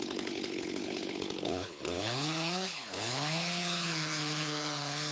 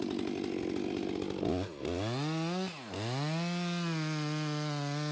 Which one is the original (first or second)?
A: second